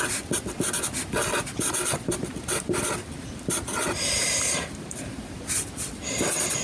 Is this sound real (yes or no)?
yes